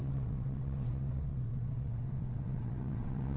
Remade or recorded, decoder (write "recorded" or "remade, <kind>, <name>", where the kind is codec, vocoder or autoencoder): remade, vocoder, WaveNeXt